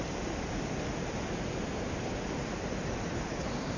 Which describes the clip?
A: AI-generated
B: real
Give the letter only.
B